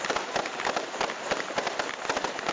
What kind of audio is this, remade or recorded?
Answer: recorded